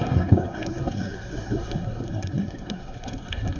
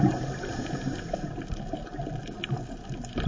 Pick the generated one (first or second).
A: first